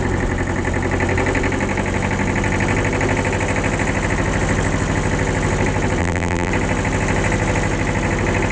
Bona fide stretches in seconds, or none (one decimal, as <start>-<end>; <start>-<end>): 0.0-6.0; 6.5-8.5